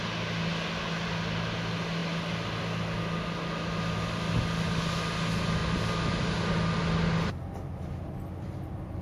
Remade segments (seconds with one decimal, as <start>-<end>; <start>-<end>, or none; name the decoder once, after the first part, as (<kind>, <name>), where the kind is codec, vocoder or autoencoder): none